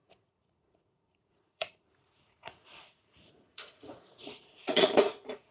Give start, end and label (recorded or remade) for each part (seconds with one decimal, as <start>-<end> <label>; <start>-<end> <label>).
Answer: 0.0-5.5 remade